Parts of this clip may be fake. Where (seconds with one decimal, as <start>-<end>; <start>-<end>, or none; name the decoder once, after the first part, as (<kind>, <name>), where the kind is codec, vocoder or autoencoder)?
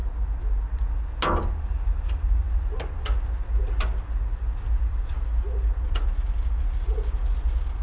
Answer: none